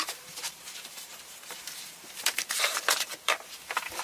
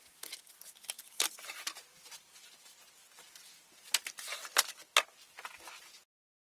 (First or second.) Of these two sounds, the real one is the second